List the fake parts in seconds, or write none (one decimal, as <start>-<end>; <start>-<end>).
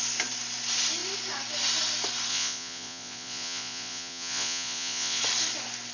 2.3-5.2